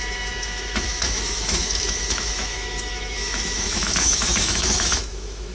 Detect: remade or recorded remade